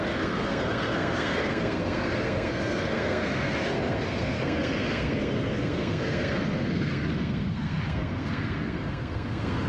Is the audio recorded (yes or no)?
no